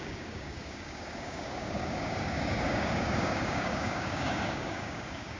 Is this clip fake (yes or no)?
yes